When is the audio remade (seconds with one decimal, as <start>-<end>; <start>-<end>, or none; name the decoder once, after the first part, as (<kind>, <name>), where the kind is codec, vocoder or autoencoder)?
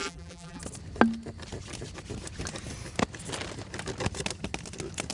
0.0-0.6 (vocoder, BigVGAN v2)